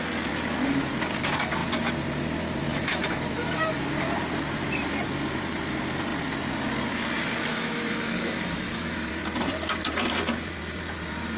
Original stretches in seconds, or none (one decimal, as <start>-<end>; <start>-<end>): 0.0-2.7; 3.8-7.5; 9.2-11.4